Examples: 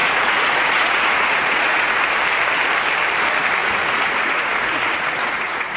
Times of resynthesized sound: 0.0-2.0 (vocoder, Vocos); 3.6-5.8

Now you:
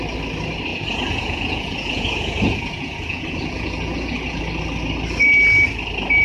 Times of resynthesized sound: 0.7-4.4 (vocoder, Vocos)